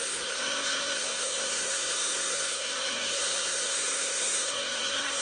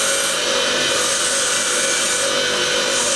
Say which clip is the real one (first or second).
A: second